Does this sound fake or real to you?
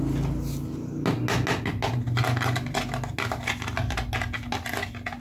real